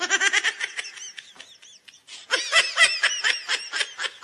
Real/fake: real